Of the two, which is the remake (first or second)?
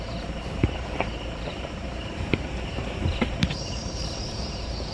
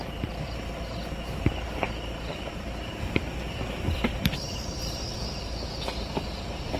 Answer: first